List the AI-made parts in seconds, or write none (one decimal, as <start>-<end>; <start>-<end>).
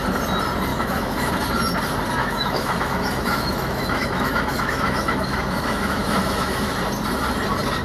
0.7-1.3; 2.2-6.7